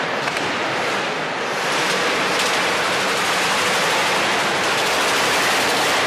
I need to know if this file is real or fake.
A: real